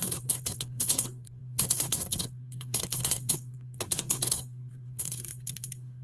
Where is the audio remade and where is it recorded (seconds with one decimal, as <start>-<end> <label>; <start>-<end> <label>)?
0.0-6.0 remade